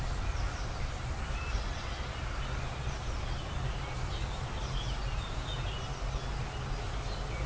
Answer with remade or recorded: recorded